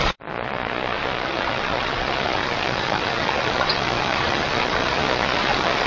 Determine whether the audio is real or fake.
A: fake